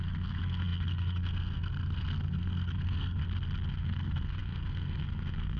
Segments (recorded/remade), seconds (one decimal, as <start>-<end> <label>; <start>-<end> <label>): 0.0-3.2 remade; 3.2-3.7 recorded; 3.7-5.6 remade